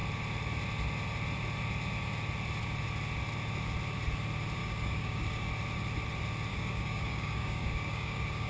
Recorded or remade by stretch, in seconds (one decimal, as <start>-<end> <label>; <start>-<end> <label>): 0.0-4.6 recorded; 4.6-5.5 remade; 5.5-6.5 recorded; 6.5-8.5 remade